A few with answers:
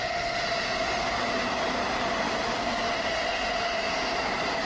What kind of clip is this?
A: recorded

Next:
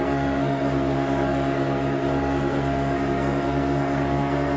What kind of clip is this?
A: remade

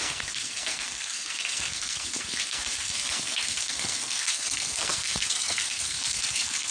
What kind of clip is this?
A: remade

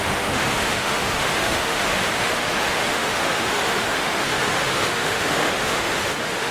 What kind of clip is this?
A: remade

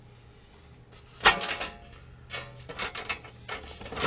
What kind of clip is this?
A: recorded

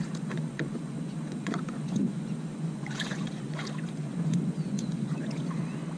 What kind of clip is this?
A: remade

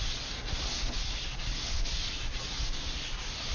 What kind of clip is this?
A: recorded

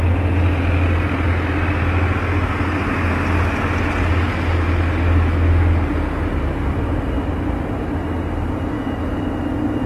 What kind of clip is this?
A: recorded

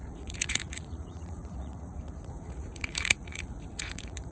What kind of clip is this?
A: remade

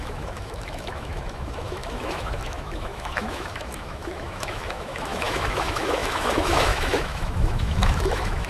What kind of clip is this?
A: remade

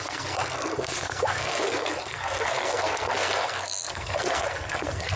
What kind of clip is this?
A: remade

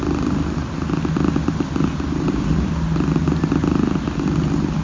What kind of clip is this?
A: recorded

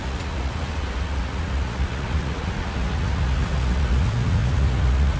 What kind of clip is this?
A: remade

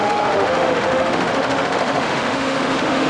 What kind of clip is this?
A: remade